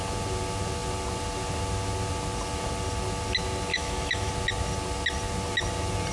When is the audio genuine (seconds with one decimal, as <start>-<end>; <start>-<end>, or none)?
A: 0.0-3.7; 4.3-6.1